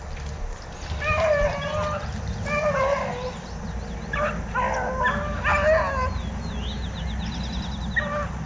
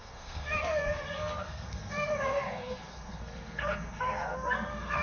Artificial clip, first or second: second